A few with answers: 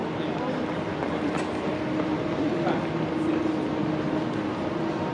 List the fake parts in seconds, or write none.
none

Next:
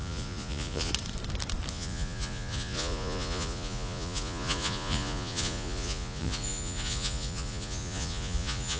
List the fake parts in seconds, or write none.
0.0-0.9 (vocoder, Vocos); 1.7-8.8

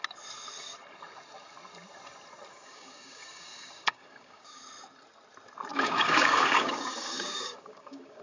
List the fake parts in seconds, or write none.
2.5-4.6 (codec, DAC); 5.7-8.2